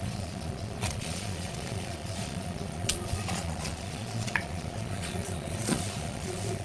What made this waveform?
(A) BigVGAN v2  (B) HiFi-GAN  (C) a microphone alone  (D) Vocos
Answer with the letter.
D